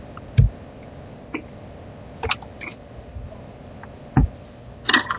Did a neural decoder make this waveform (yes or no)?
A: no